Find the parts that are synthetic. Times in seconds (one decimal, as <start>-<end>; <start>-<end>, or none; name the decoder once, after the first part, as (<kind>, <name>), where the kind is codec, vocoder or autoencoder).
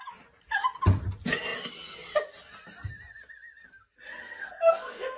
4.2-5.2 (codec, SNAC)